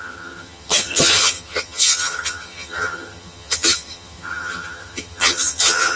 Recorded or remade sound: remade